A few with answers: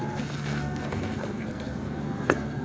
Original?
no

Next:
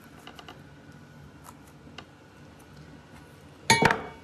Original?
yes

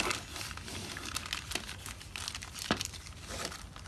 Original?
yes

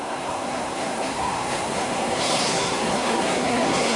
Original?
no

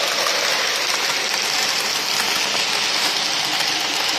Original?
yes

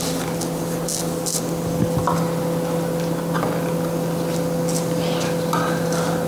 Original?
yes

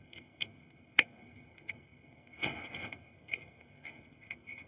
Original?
no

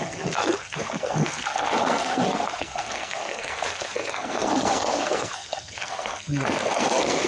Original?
no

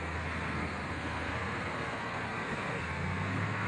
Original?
no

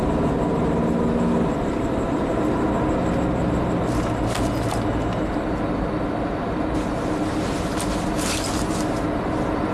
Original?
yes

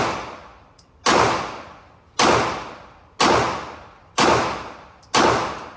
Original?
yes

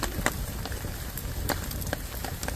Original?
yes